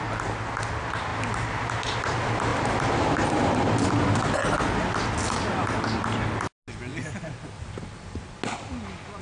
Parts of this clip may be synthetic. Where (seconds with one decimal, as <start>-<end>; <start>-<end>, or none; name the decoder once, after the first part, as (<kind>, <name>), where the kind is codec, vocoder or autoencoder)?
1.1-1.7 (vocoder, BigVGAN v2); 2.5-3.9